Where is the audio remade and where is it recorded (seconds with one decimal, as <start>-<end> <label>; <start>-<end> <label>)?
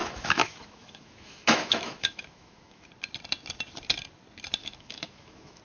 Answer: 0.0-2.9 remade; 2.9-4.6 recorded; 4.6-5.6 remade